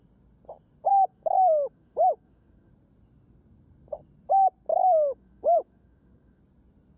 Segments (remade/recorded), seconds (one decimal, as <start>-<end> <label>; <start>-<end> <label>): 0.0-0.9 recorded; 0.9-2.7 remade; 2.7-4.7 recorded; 4.7-6.4 remade; 6.4-7.0 recorded